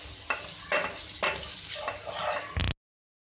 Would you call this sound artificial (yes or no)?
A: no